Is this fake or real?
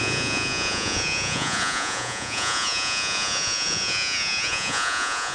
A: fake